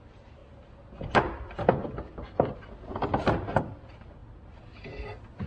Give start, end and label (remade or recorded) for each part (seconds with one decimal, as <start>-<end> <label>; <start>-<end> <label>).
0.0-5.5 recorded